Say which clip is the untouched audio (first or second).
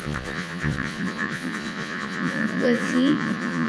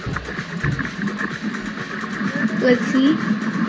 second